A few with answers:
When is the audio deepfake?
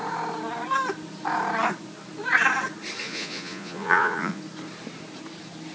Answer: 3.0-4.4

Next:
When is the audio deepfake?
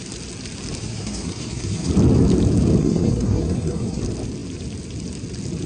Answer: 0.8-1.9; 2.8-4.0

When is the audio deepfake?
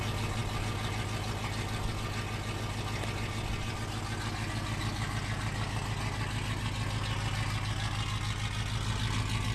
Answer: none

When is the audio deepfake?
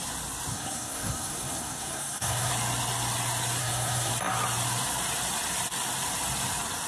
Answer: 0.5-2.5; 3.6-4.1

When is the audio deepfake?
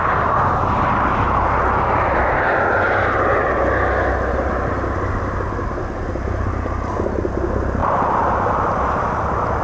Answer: none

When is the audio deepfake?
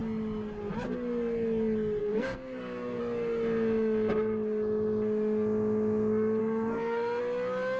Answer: 2.0-3.0; 6.4-7.2